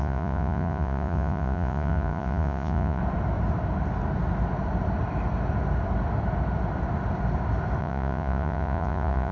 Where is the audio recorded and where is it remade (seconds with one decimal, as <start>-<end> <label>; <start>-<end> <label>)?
0.0-3.0 remade; 3.0-7.8 recorded; 7.8-9.3 remade